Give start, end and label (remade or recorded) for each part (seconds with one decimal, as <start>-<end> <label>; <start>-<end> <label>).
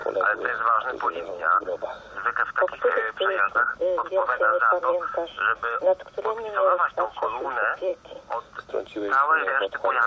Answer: 0.0-2.8 recorded; 2.8-7.9 remade; 7.9-8.7 recorded; 8.7-10.1 remade